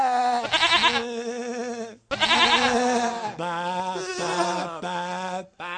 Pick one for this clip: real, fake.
real